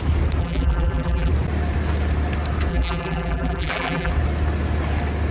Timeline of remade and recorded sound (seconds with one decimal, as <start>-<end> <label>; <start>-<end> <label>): 0.0-0.4 recorded; 0.4-1.3 remade; 1.3-2.7 recorded; 2.7-4.1 remade; 4.1-5.3 recorded